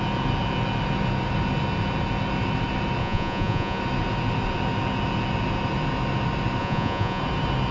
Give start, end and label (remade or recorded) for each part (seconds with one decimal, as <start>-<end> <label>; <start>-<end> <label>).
0.0-3.0 recorded; 3.0-3.8 remade; 3.8-6.6 recorded; 6.6-7.2 remade; 7.2-7.7 recorded